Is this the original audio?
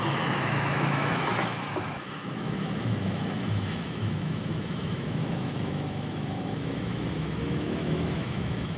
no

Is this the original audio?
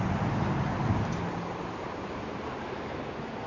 yes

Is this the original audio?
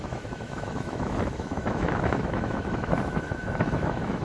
no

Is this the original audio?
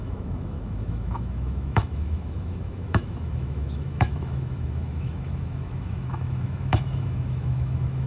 no